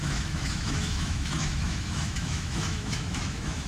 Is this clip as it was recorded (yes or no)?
no